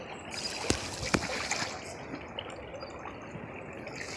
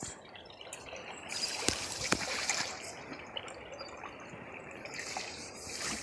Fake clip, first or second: second